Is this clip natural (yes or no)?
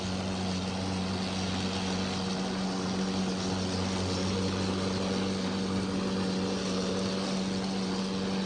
yes